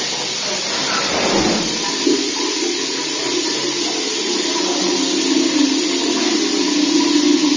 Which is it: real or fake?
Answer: real